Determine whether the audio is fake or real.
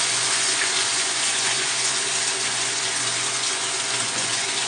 fake